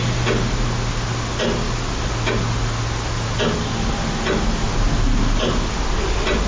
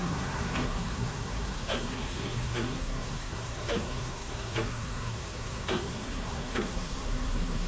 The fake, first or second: second